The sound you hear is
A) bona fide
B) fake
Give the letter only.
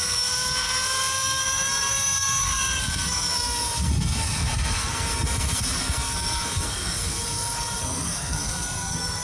B